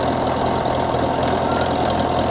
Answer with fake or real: real